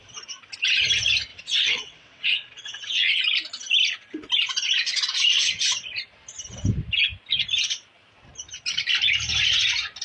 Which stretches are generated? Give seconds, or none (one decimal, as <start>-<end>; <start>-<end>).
1.3-3.2

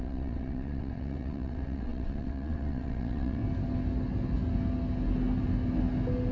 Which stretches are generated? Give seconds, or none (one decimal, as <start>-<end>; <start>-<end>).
0.0-3.4

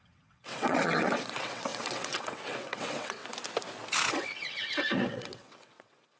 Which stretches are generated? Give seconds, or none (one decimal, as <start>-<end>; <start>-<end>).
0.0-3.2; 4.1-6.2

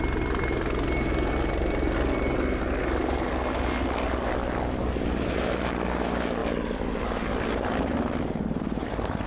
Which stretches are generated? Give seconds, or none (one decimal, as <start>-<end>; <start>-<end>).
none

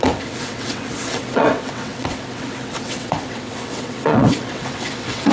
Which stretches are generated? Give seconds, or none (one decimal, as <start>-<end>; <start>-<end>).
0.0-5.3

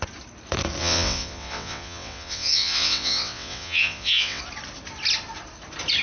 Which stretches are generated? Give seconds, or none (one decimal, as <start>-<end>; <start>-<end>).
0.8-4.4

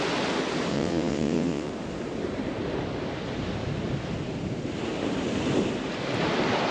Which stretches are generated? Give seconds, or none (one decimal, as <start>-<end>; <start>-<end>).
0.7-1.7

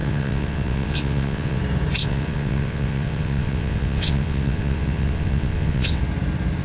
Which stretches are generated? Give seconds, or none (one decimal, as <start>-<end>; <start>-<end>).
0.0-1.6; 2.0-6.0